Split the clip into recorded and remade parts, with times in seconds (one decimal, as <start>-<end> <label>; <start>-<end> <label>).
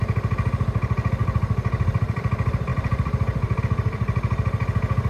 0.0-2.7 recorded; 2.7-3.6 remade; 3.6-5.1 recorded